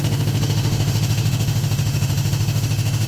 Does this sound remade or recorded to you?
remade